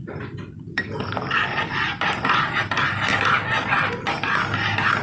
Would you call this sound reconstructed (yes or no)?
no